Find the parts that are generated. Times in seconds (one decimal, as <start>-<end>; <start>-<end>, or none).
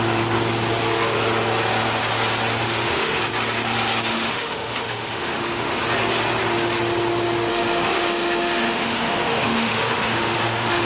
2.6-3.2; 4.1-5.8; 7.5-10.9